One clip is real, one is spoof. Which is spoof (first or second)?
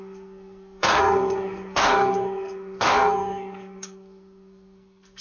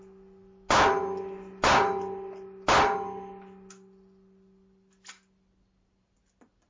first